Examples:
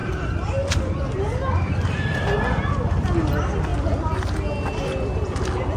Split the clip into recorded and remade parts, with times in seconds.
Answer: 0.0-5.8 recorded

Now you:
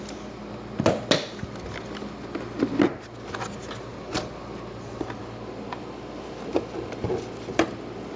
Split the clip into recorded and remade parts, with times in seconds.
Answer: 0.0-8.2 recorded

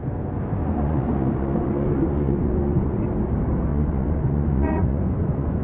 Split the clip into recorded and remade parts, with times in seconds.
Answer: 0.0-0.6 recorded; 0.6-3.0 remade; 3.0-3.7 recorded; 3.7-5.6 remade

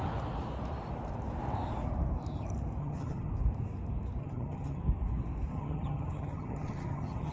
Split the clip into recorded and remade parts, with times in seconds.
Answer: 0.0-2.8 recorded; 2.8-3.3 remade; 3.3-4.2 recorded; 4.2-4.8 remade; 4.8-5.5 recorded; 5.5-7.3 remade

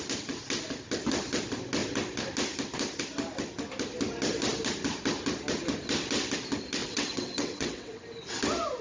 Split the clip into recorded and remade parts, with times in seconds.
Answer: 0.0-6.8 recorded; 6.8-8.0 remade; 8.0-8.8 recorded